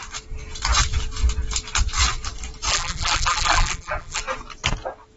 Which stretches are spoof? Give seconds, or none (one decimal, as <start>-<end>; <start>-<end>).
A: 2.7-4.2